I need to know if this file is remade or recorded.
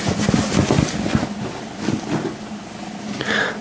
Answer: recorded